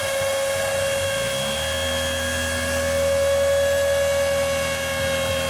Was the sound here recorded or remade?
recorded